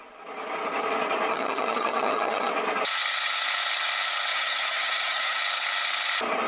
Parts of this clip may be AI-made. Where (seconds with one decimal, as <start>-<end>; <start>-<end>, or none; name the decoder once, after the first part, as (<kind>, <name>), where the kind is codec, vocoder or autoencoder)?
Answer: 1.3-2.5 (vocoder, HiFi-GAN); 4.3-5.4